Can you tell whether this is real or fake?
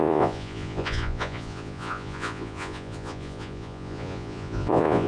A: fake